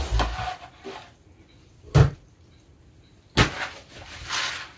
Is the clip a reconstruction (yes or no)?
no